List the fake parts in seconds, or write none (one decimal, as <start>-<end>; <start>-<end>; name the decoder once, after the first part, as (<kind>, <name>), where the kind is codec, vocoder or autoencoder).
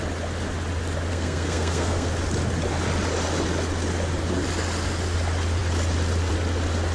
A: 1.1-2.1 (codec, SNAC)